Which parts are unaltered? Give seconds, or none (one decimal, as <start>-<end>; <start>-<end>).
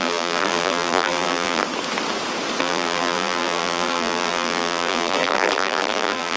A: 1.6-2.6